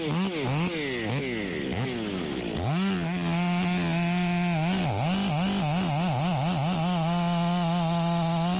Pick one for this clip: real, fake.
real